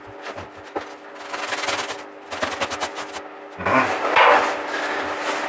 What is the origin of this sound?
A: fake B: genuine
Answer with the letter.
B